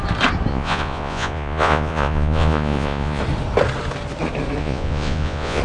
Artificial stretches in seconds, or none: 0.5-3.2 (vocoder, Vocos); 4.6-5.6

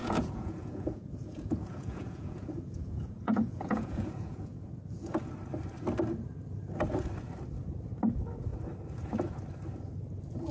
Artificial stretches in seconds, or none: 0.0-4.7 (vocoder, Vocos)

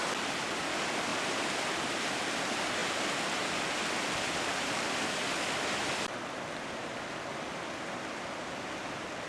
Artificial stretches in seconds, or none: none

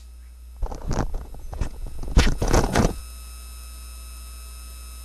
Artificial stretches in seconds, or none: 1.1-3.0 (vocoder, Vocos)

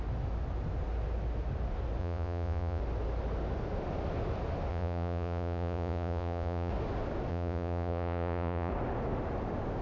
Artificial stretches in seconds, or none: 2.0-2.8 (vocoder, Vocos); 4.7-6.7; 7.3-8.7